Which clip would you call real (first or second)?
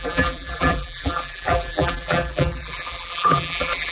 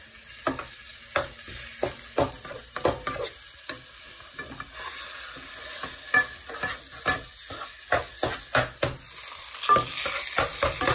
second